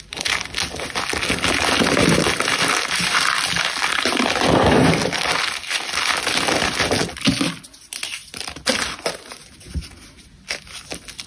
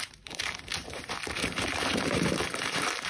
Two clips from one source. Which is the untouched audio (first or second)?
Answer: first